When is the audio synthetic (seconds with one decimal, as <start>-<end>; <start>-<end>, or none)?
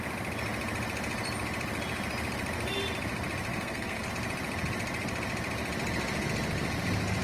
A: 3.5-4.1